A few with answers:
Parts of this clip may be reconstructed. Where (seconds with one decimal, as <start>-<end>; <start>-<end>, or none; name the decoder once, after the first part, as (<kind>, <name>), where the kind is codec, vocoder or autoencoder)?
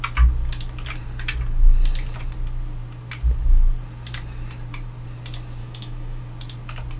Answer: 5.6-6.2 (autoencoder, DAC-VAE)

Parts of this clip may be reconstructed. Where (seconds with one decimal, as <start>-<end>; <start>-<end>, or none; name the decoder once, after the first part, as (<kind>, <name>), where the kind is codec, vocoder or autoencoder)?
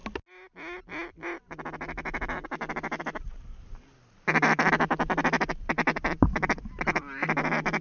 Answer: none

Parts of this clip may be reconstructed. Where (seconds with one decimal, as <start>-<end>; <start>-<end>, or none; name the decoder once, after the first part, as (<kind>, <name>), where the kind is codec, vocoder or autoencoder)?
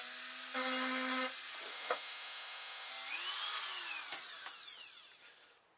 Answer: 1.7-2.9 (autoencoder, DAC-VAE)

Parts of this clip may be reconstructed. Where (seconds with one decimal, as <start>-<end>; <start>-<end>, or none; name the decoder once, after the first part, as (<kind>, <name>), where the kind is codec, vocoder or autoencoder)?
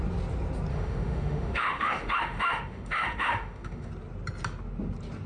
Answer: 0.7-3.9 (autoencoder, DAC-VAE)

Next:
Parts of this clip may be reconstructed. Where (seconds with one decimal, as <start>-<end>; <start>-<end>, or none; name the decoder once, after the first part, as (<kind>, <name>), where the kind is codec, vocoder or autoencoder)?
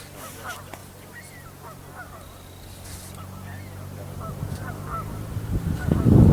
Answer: none